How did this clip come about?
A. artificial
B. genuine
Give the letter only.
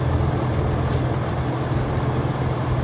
B